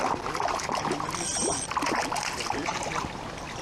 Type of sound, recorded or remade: remade